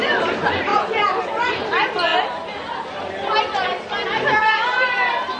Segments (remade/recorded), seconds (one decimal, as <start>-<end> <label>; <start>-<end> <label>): 0.0-5.4 recorded